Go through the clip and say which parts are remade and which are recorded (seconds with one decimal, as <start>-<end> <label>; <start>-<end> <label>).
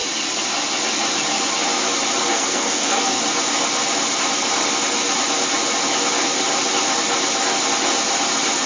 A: 0.0-2.3 recorded; 2.3-3.2 remade; 3.2-8.7 recorded